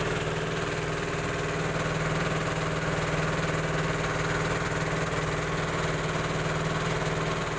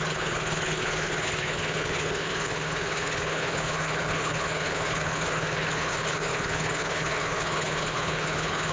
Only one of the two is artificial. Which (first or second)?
second